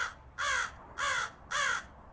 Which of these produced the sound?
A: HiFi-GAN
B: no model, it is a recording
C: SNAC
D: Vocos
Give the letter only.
B